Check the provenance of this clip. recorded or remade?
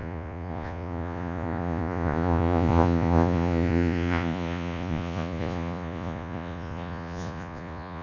remade